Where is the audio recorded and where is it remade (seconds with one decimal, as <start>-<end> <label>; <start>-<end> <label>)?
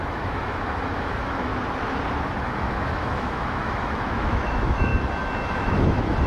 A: 0.0-1.5 remade; 1.5-2.4 recorded; 2.4-4.9 remade; 4.9-5.6 recorded; 5.6-6.3 remade